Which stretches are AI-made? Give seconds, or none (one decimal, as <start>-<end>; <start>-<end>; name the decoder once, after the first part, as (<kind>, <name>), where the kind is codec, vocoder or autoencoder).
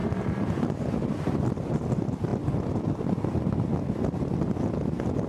none